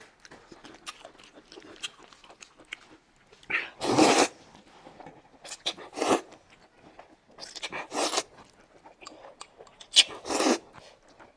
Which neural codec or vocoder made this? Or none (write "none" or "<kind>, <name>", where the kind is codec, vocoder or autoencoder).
none